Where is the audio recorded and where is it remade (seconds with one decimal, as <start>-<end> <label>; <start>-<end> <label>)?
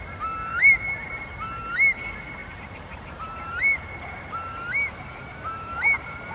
0.0-0.5 recorded; 0.5-1.4 remade; 1.4-2.4 recorded; 2.4-6.3 remade